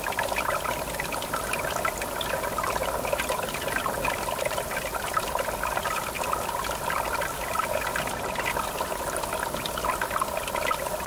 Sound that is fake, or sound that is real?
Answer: real